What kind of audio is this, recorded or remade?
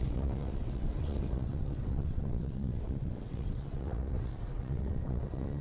remade